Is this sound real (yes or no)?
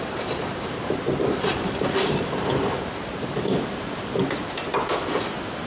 no